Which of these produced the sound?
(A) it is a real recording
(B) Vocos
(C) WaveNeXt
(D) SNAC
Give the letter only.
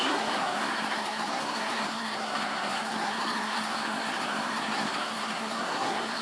D